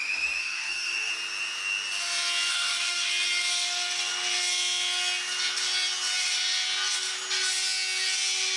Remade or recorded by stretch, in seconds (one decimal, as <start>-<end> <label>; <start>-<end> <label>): 0.0-0.4 recorded; 0.4-1.1 remade; 1.1-2.5 recorded; 2.5-3.1 remade; 3.1-8.6 recorded